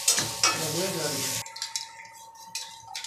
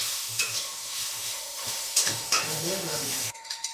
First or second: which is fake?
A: second